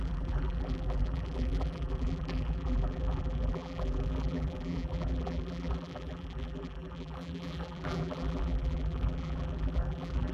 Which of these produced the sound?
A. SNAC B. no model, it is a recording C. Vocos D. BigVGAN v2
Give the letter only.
D